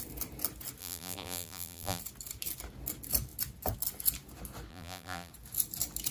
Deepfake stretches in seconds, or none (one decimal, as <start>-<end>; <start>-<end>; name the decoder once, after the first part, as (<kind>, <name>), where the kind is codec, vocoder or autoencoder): 0.8-2.0 (vocoder, BigVGAN v2); 4.7-5.3